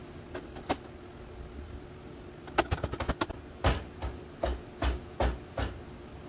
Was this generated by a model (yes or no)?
no